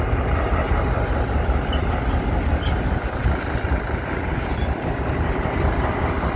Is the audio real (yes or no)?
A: yes